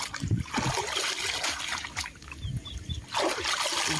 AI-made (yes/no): no